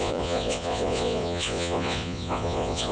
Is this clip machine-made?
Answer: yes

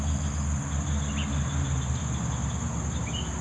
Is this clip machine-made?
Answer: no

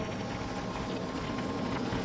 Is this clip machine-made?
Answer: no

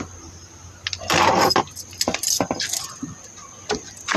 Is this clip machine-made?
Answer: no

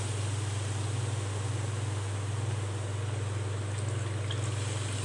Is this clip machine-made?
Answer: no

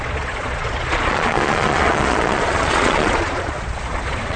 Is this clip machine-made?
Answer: yes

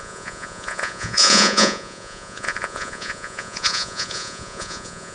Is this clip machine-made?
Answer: yes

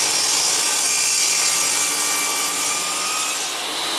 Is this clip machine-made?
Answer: no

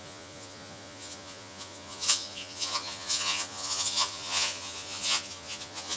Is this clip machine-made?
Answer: yes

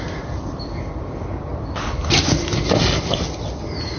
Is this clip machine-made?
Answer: no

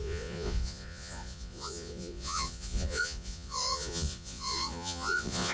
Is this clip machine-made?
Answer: yes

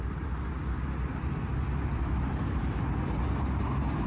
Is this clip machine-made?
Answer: no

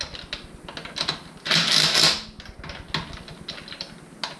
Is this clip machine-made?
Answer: no